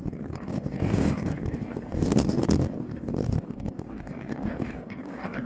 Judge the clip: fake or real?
fake